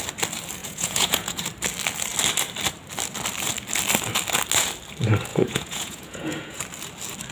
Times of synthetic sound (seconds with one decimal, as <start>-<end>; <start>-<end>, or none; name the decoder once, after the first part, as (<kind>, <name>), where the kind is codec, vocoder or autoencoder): 0.6-1.4 (vocoder, Vocos); 5.3-6.6